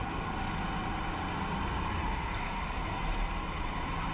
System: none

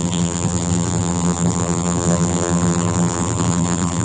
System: vocoder, BigVGAN v2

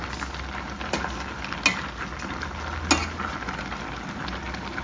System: none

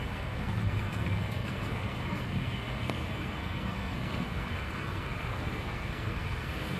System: codec, SNAC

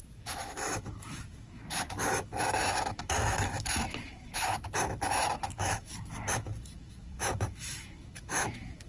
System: autoencoder, DAC-VAE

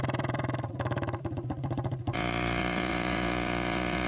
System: vocoder, Vocos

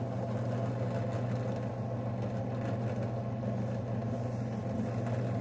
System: none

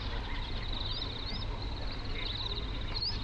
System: none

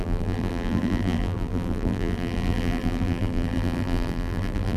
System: vocoder, BigVGAN v2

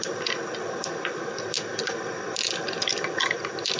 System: none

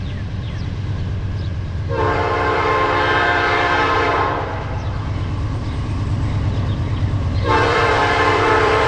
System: vocoder, BigVGAN v2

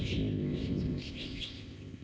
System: codec, ZipCodec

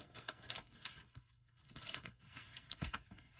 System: codec, SNAC